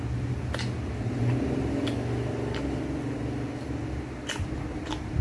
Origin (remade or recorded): recorded